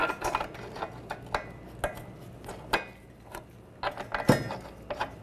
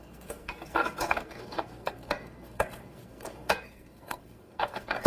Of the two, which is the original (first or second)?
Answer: first